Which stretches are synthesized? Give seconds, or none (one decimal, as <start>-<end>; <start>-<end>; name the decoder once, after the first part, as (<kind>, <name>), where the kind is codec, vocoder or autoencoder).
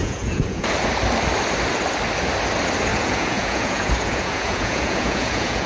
0.0-0.6 (vocoder, Vocos); 2.9-5.7